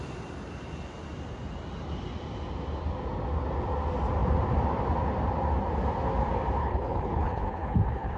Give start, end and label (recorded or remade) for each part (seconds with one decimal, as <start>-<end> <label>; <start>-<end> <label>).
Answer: 0.0-6.6 recorded; 6.6-8.2 remade